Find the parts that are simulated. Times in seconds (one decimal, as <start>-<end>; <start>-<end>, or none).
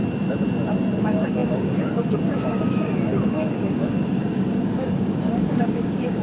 1.0-6.2